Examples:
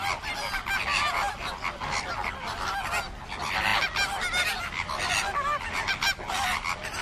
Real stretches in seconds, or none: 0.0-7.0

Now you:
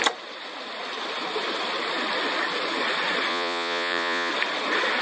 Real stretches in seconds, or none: 0.0-3.3; 4.3-5.0